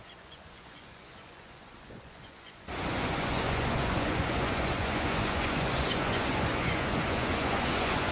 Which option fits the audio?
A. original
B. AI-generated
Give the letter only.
B